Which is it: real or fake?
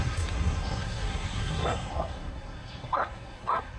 fake